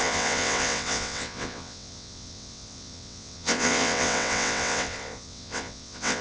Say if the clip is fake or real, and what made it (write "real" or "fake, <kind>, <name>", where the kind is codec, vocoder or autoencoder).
fake, vocoder, WaveNeXt